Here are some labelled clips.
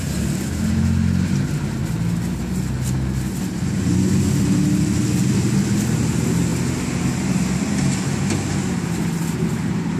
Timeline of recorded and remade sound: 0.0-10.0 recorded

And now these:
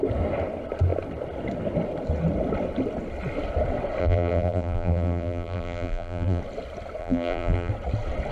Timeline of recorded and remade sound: 0.0-4.0 recorded; 4.0-6.4 remade; 6.4-7.0 recorded; 7.0-7.7 remade; 7.7-8.3 recorded